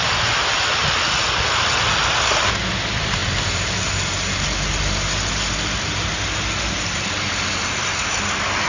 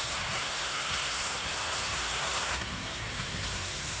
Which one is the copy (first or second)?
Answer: second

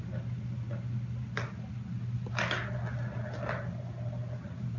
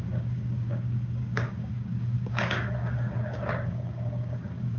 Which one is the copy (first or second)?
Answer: second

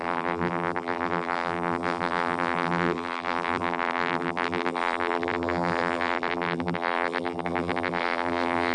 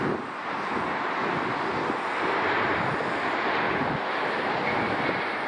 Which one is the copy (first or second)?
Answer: first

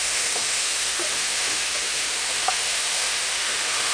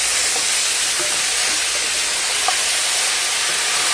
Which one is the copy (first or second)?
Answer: first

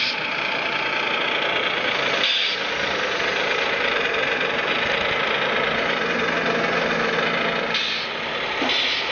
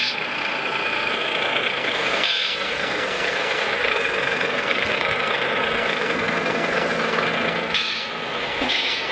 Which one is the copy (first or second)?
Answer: second